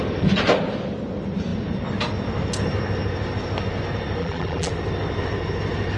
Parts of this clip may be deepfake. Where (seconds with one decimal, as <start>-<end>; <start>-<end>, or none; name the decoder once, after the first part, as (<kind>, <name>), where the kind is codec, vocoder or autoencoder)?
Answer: 4.2-4.7 (vocoder, BigVGAN v2)